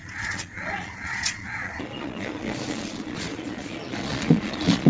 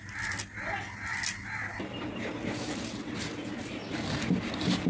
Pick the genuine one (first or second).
second